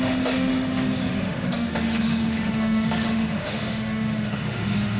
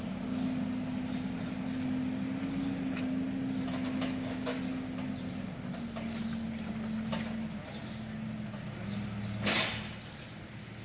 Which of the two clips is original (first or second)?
second